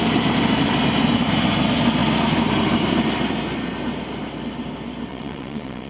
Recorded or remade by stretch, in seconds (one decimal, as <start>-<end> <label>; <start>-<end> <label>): 0.0-5.1 recorded; 5.1-5.9 remade